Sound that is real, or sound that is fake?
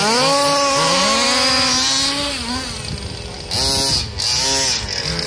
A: real